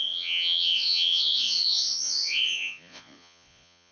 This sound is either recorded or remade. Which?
remade